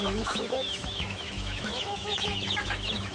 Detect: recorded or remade remade